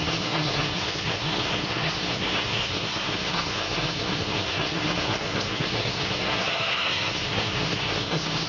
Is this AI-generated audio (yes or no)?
yes